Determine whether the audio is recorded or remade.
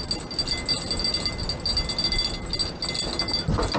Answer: recorded